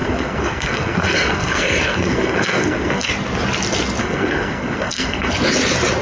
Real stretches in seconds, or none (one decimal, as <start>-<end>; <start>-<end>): 3.1-4.0; 5.3-6.0